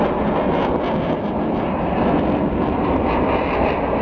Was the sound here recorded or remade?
recorded